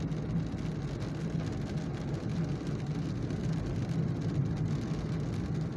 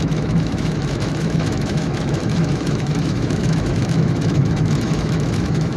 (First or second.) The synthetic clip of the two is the second